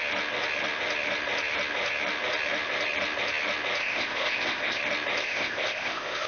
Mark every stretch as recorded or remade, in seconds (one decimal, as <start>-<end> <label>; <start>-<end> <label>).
0.0-3.8 recorded; 3.8-4.8 remade; 4.8-5.2 recorded; 5.2-6.3 remade